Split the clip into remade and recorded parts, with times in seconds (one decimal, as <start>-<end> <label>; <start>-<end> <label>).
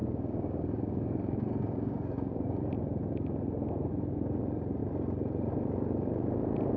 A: 0.0-2.7 remade; 2.7-6.8 recorded